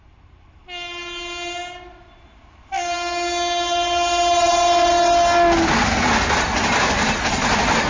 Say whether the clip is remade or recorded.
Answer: recorded